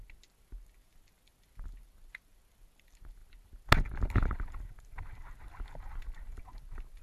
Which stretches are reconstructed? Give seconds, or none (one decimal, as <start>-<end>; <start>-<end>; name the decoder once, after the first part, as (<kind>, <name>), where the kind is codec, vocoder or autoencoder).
none